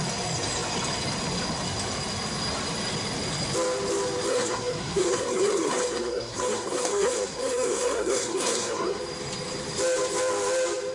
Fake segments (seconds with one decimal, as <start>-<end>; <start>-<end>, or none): 4.3-9.0